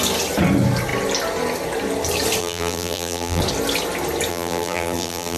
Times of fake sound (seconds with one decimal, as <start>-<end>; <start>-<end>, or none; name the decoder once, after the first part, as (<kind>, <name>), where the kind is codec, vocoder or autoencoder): 2.4-3.4 (vocoder, BigVGAN v2); 4.3-5.4